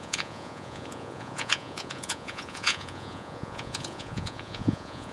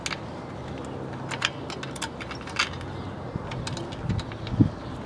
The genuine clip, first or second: second